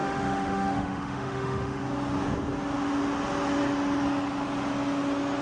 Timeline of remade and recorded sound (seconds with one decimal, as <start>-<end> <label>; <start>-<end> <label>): 0.0-1.8 remade; 1.8-5.4 recorded